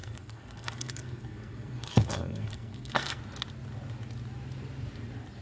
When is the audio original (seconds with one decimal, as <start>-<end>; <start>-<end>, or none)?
3.2-5.4